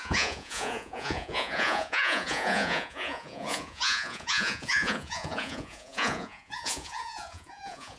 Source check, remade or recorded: remade